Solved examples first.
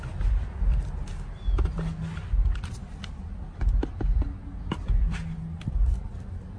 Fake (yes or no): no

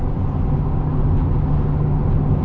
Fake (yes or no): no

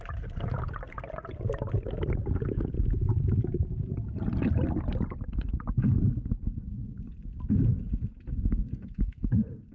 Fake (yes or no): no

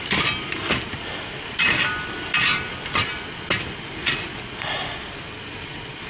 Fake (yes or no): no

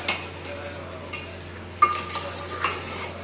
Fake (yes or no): no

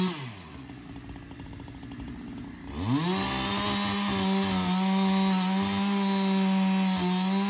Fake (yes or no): no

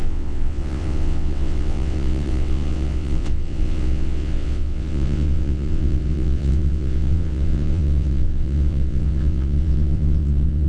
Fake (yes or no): yes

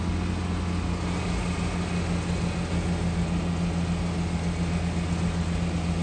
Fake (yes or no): no